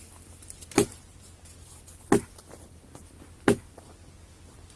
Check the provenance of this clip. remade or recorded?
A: recorded